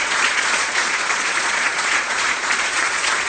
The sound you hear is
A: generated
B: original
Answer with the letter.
A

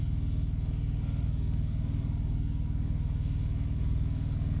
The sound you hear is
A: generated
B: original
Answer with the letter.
A